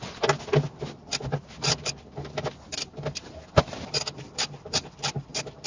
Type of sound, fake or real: real